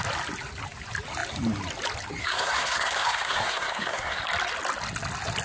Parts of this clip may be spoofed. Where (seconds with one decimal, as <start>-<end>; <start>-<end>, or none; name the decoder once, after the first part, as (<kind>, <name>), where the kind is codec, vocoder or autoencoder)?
2.2-4.2 (codec, SNAC)